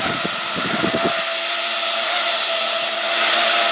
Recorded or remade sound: recorded